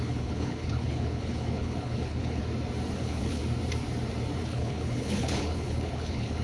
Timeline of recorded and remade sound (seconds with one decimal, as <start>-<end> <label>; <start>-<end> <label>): 0.0-2.4 remade; 2.4-3.0 recorded; 3.0-3.4 remade; 3.4-4.4 recorded; 4.4-6.4 remade